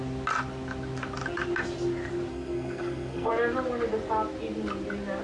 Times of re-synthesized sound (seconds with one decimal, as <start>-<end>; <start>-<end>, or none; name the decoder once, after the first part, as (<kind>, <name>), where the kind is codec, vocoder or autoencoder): 2.3-3.3 (codec, SNAC)

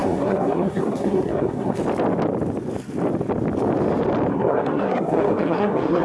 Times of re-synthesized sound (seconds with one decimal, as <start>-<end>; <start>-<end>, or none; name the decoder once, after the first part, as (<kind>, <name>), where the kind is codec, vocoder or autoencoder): 0.0-1.8 (codec, SNAC); 4.3-6.0

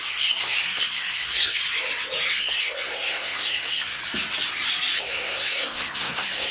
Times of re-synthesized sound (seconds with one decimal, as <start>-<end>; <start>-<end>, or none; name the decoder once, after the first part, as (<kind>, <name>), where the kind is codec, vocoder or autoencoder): 0.0-1.6 (codec, SNAC); 2.3-4.0; 5.0-6.5

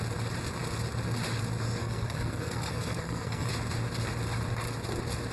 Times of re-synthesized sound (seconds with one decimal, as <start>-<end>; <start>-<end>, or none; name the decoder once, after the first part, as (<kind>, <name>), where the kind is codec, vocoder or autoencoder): 1.8-3.5 (codec, SNAC)

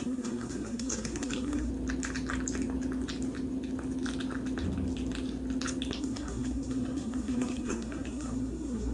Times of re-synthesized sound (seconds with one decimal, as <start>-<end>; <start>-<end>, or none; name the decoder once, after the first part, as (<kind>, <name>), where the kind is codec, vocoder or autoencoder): 0.0-1.7 (codec, SNAC); 6.0-8.9